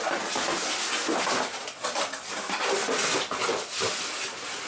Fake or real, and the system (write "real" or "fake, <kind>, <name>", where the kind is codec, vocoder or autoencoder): real